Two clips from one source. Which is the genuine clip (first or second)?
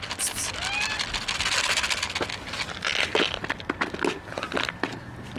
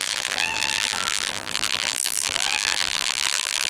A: first